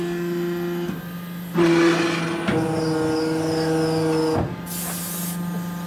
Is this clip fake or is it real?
real